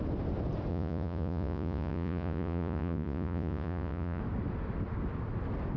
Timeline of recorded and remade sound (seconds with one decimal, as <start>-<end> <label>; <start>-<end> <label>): 0.0-0.7 recorded; 0.7-4.2 remade; 4.2-5.8 recorded